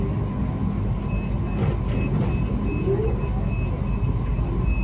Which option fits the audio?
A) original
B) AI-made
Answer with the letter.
A